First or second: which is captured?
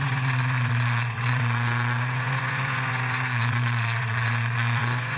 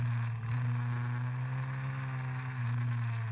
second